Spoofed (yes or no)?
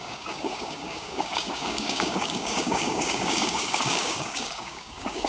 yes